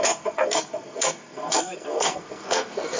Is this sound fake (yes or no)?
yes